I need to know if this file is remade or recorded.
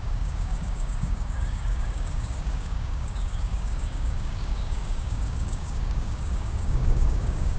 remade